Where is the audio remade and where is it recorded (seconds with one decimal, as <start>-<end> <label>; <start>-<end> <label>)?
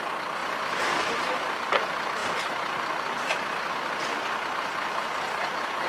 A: 0.0-5.9 recorded